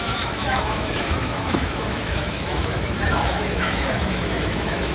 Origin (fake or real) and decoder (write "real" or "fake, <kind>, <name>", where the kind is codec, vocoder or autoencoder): fake, autoencoder, DAC-VAE